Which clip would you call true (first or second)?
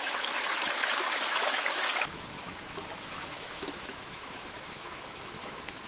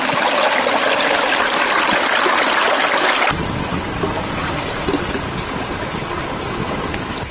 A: second